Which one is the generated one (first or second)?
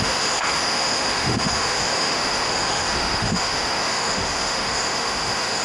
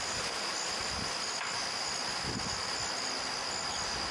first